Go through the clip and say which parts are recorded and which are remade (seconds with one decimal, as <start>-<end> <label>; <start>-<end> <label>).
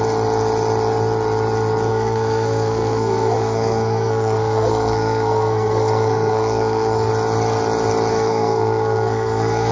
0.0-1.9 recorded; 1.9-7.1 remade; 7.1-8.1 recorded; 8.1-9.7 remade